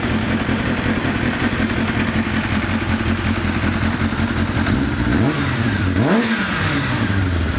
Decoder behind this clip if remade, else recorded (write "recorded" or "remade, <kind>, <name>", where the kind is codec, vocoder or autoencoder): remade, vocoder, BigVGAN v2